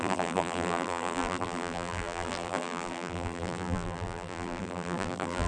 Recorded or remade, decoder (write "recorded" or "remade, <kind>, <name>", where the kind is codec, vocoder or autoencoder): remade, vocoder, BigVGAN v2